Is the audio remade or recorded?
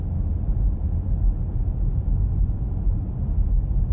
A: recorded